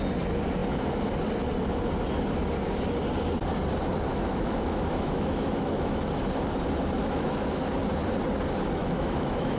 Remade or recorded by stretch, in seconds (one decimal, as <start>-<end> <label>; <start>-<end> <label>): 0.0-4.1 recorded; 4.1-6.0 remade; 6.0-7.0 recorded; 7.0-7.6 remade; 7.6-8.8 recorded; 8.8-9.6 remade